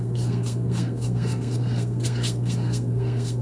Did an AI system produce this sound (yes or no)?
yes